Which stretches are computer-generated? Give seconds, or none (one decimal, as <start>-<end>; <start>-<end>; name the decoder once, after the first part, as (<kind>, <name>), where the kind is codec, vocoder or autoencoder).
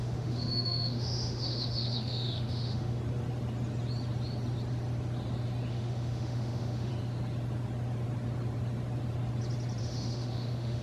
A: 0.0-3.0 (autoencoder, DAC-VAE); 5.7-6.9; 9.8-10.8